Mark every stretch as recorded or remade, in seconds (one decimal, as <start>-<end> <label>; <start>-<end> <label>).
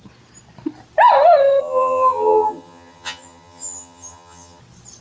0.0-1.6 recorded; 1.6-4.6 remade; 4.6-5.0 recorded